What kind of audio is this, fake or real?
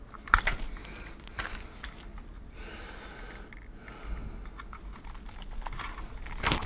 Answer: real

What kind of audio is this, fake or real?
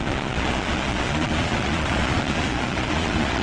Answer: fake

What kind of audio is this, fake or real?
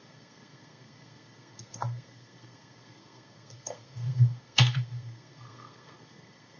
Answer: fake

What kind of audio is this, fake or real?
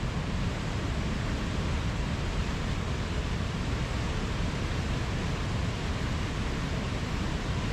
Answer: fake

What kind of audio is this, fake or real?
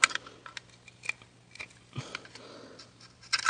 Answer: real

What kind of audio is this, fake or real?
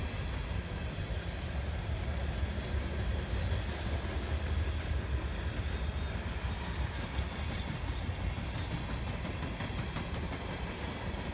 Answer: real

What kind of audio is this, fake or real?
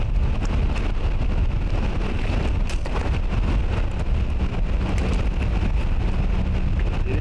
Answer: real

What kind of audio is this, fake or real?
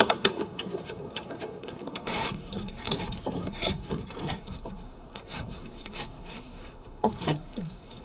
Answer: fake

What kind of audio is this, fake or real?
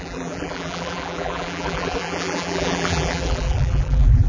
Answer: fake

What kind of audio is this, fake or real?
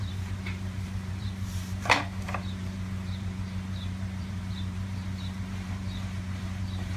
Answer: fake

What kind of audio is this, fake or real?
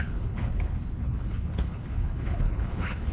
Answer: fake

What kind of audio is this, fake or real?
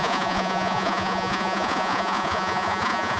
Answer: fake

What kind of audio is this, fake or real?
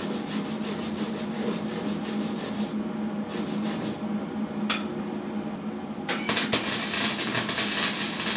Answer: real